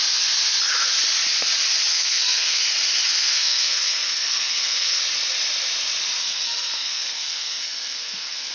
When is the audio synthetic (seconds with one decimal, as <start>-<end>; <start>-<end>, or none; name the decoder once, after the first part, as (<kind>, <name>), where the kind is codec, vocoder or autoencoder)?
1.9-2.6 (codec, SNAC); 3.1-5.0; 6.2-8.5